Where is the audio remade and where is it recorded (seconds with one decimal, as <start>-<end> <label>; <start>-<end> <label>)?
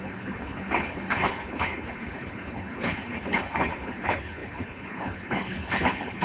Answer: 0.0-6.2 remade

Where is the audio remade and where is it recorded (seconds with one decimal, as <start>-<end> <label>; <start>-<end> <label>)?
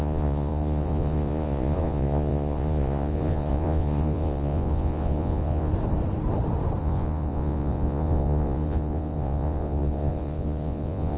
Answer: 0.0-5.7 remade; 5.7-6.8 recorded; 6.8-11.2 remade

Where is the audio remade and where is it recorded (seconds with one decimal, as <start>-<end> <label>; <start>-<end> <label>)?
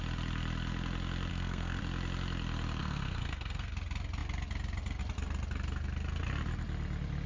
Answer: 0.0-1.3 recorded; 1.3-1.8 remade; 1.8-2.8 recorded; 2.8-3.7 remade; 3.7-7.3 recorded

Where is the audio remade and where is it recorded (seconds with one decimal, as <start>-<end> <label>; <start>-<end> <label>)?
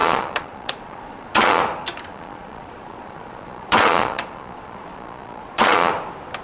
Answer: 0.0-1.6 remade; 1.6-2.1 recorded; 2.1-5.9 remade; 5.9-6.4 recorded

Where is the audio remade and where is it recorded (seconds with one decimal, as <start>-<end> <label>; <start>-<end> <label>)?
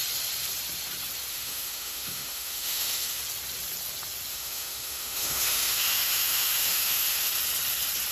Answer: 0.0-1.3 recorded; 1.3-3.2 remade; 3.2-4.3 recorded; 4.3-7.3 remade; 7.3-8.1 recorded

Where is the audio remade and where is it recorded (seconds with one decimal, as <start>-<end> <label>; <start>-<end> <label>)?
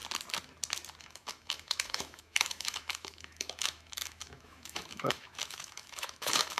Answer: 0.0-1.0 recorded; 1.0-6.6 remade